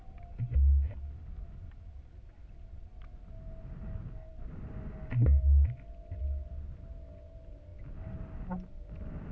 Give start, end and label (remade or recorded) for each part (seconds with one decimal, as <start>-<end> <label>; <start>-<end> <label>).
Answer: 0.0-9.3 recorded